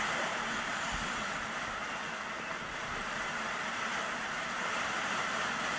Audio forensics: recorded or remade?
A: recorded